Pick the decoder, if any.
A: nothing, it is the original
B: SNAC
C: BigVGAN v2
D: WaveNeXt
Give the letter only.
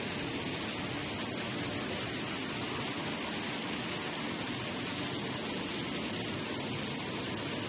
A